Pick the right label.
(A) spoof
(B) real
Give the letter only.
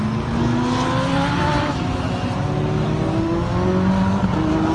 B